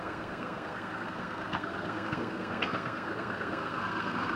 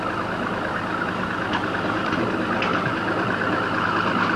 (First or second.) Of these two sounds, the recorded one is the second